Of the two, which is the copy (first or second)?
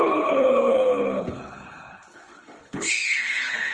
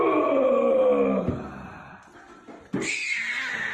first